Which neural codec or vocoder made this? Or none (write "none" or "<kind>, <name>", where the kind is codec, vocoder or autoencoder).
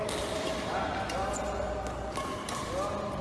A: none